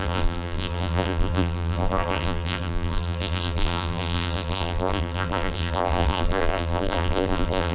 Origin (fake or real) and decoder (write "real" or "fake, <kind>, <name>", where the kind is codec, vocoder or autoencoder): fake, vocoder, BigVGAN v2